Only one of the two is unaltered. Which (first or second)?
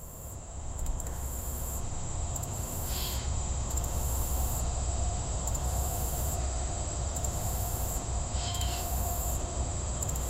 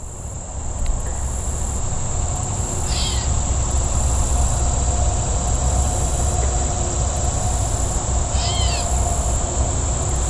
second